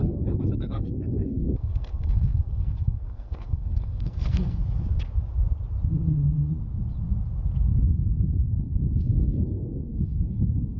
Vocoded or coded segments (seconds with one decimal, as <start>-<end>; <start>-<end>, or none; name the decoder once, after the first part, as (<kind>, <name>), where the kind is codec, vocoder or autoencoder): 0.0-4.6 (codec, SNAC); 8.3-10.8